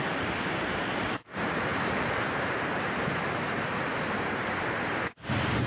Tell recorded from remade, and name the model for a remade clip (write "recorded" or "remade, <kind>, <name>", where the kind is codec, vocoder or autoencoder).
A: remade, vocoder, BigVGAN v2